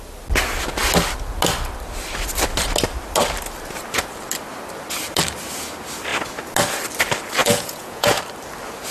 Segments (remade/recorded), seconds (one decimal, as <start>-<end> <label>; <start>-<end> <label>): 0.0-7.4 recorded; 7.4-8.2 remade; 8.2-8.9 recorded